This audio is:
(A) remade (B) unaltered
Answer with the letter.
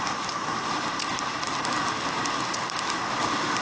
B